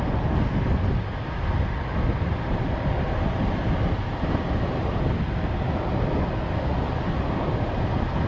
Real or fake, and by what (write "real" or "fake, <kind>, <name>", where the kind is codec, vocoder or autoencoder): real